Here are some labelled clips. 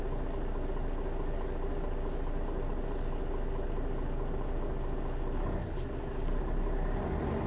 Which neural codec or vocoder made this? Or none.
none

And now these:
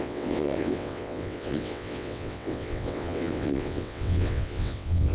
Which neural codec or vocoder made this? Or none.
vocoder, WaveNeXt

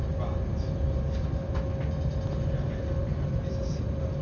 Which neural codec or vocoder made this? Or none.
none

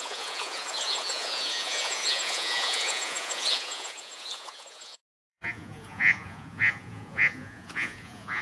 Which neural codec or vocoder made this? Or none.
vocoder, Vocos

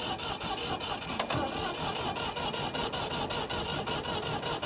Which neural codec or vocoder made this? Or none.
none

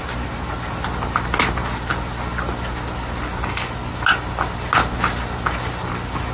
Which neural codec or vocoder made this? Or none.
none